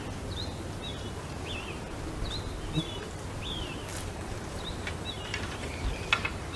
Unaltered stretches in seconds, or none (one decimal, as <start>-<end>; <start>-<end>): 0.0-3.9; 4.9-6.6